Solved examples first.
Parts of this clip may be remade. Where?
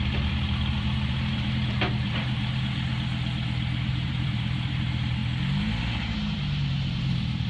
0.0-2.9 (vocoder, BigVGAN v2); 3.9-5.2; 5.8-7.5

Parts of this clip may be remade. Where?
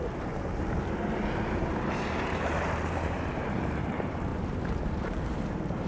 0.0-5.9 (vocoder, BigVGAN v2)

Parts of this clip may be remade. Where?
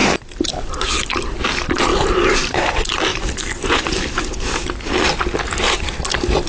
0.0-0.5 (vocoder, BigVGAN v2); 1.9-2.7; 3.1-3.8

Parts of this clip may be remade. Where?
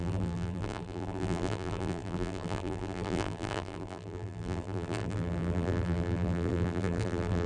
0.0-7.5 (vocoder, BigVGAN v2)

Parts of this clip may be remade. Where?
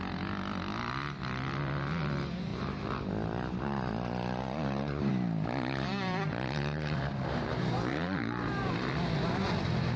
2.5-5.1 (vocoder, BigVGAN v2); 6.7-8.7